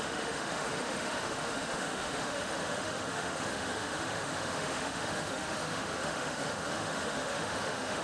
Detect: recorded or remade remade